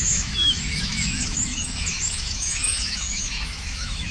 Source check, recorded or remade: remade